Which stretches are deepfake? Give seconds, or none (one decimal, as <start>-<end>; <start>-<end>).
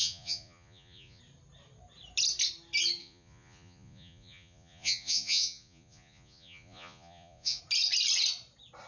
0.0-1.2; 3.0-7.6